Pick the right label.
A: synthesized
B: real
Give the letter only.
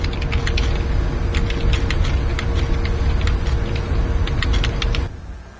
B